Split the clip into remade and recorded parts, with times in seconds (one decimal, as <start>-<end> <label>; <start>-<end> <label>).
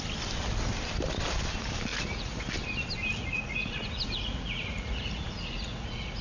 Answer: 0.0-1.9 recorded; 1.9-2.5 remade; 2.5-3.1 recorded; 3.1-6.2 remade